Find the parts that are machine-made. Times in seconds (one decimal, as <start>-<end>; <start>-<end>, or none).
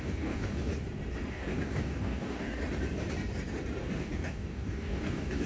0.0-0.7; 1.3-2.6; 4.0-5.5